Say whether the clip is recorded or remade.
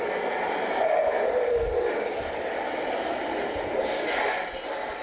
recorded